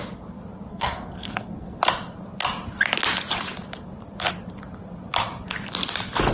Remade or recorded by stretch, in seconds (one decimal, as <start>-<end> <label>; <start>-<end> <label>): 0.0-0.7 recorded; 0.7-1.8 remade; 1.8-6.3 recorded